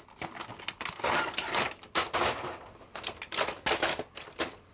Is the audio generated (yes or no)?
no